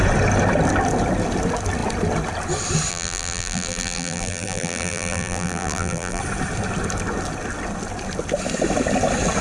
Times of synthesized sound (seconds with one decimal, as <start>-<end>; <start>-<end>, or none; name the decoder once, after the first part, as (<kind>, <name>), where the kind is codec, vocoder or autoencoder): 2.9-6.2 (vocoder, BigVGAN v2)